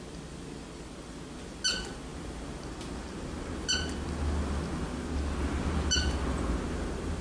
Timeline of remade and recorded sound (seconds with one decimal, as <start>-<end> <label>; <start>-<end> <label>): 0.0-7.2 recorded